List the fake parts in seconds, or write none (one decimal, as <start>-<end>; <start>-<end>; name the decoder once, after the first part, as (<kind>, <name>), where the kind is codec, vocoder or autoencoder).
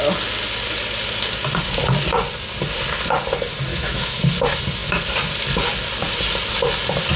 3.7-4.2 (autoencoder, DAC-VAE)